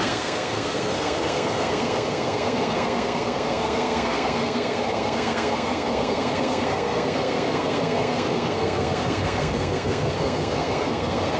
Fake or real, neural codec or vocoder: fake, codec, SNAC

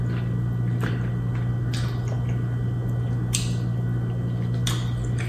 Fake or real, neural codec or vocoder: real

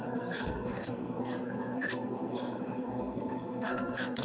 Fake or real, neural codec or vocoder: fake, codec, SNAC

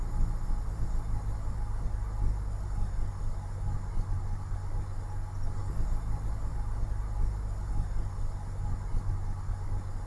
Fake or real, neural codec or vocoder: real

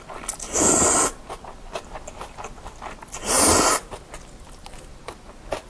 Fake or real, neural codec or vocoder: real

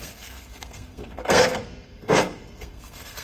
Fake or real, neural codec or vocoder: fake, codec, SNAC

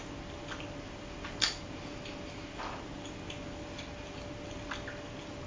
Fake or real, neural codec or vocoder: real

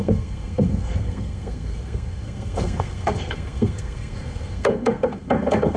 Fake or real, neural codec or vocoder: fake, codec, SNAC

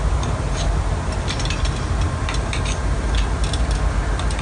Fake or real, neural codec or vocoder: real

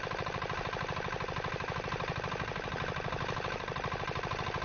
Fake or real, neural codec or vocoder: real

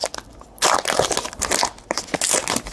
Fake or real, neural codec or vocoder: real